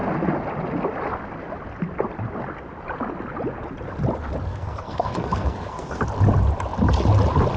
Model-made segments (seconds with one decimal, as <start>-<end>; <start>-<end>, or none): 4.5-6.0